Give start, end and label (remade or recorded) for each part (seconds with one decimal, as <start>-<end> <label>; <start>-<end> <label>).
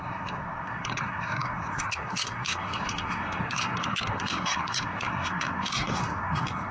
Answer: 0.0-6.7 remade